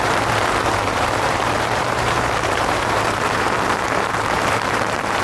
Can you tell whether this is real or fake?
fake